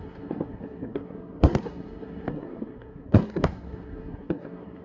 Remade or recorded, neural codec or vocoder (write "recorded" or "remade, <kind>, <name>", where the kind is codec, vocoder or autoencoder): remade, codec, SNAC